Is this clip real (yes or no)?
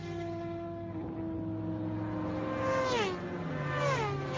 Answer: yes